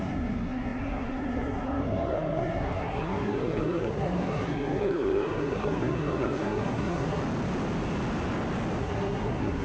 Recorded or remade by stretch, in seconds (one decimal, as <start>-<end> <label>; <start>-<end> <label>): 0.0-7.2 remade; 7.2-8.8 recorded; 8.8-9.6 remade

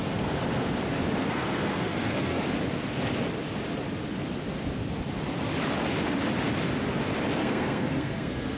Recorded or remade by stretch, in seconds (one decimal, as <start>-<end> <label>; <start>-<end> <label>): 0.0-1.2 recorded; 1.2-2.4 remade; 2.4-7.4 recorded; 7.4-8.6 remade

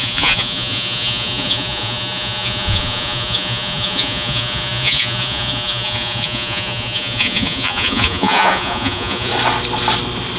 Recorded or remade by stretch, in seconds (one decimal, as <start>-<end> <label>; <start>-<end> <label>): 0.0-9.3 remade; 9.3-10.4 recorded